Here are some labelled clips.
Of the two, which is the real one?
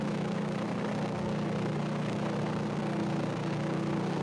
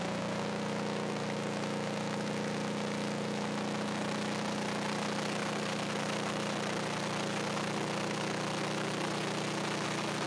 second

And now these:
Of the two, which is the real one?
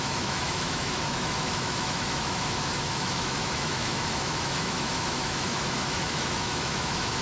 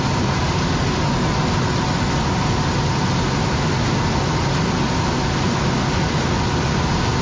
second